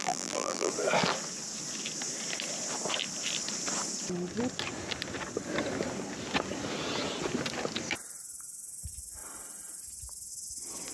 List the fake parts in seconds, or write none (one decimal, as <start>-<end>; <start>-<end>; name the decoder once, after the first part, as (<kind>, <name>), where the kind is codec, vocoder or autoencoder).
0.0-0.7 (vocoder, BigVGAN v2)